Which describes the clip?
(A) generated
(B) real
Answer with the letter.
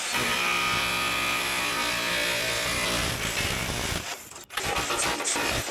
B